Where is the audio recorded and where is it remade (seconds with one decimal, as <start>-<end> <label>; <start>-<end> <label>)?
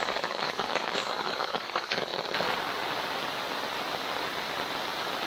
0.0-2.1 remade; 2.1-5.3 recorded